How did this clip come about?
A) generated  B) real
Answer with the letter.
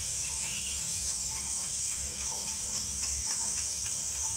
A